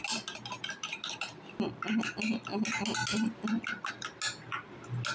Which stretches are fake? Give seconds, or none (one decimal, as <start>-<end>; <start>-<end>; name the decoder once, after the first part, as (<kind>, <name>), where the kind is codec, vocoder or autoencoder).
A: none